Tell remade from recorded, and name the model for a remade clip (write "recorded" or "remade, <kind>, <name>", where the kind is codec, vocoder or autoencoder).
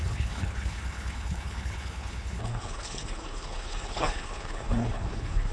remade, codec, HILCodec